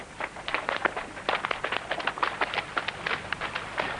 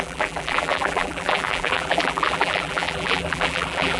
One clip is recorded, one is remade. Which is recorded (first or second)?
first